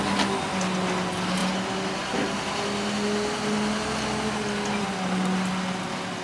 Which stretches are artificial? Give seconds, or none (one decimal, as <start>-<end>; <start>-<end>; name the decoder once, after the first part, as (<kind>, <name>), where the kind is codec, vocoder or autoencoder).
none